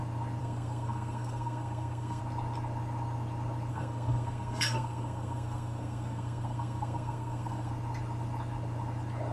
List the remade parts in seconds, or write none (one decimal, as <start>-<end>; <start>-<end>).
0.4-2.2; 3.7-7.7